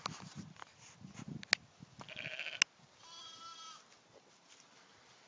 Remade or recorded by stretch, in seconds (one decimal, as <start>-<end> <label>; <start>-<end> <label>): 0.0-5.3 recorded